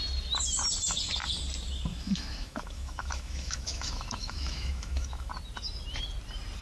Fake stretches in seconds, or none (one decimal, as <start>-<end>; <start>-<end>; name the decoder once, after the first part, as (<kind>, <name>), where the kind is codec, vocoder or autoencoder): 1.9-5.3 (autoencoder, DAC-VAE)